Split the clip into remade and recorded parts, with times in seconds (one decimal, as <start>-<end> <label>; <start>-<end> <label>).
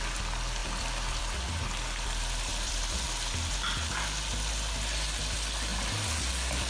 0.0-0.6 recorded; 0.6-1.2 remade; 1.2-2.5 recorded; 2.5-3.0 remade; 3.0-6.7 recorded